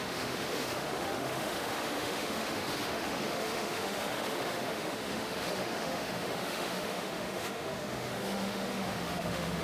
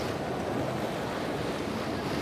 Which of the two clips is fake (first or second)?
first